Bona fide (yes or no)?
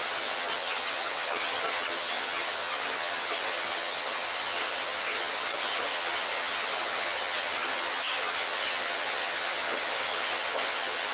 no